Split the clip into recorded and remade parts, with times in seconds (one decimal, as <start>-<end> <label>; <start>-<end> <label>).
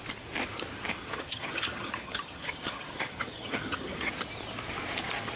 0.0-1.0 recorded; 1.0-4.1 remade; 4.1-5.4 recorded